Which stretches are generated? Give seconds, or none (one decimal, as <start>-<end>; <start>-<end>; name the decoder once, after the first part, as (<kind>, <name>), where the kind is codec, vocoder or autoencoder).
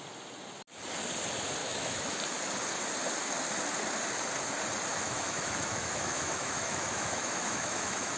1.6-2.2 (autoencoder, DAC-VAE); 4.9-8.2